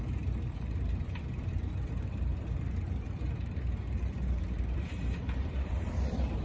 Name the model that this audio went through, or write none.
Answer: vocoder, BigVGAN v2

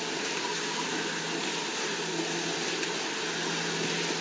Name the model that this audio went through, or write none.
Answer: none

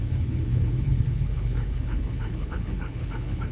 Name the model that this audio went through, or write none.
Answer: codec, HILCodec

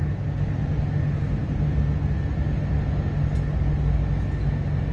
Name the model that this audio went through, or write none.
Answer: none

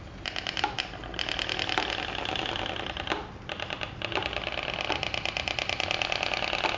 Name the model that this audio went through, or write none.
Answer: none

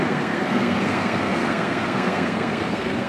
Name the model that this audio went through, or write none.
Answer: codec, SNAC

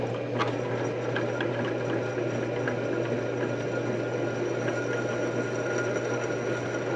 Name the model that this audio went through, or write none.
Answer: none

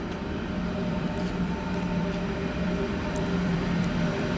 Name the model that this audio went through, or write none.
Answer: vocoder, BigVGAN v2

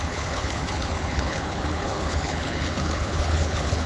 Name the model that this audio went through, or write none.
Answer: codec, HILCodec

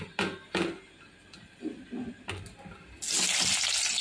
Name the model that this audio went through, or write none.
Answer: none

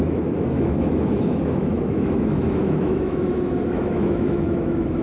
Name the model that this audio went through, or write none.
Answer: autoencoder, DAC-VAE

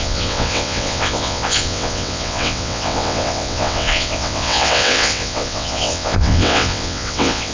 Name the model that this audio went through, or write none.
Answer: vocoder, WaveNeXt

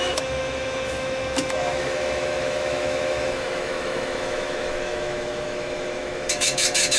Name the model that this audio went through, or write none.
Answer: autoencoder, DAC-VAE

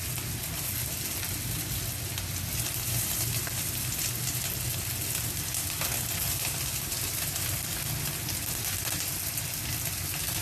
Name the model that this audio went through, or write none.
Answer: none